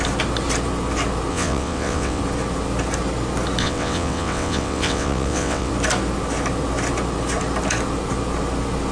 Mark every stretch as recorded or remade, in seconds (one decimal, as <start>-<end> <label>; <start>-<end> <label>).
0.0-1.3 recorded; 1.3-2.2 remade; 2.2-3.6 recorded; 3.6-5.7 remade; 5.7-8.9 recorded